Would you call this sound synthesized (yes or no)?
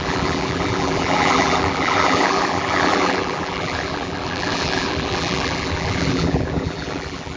yes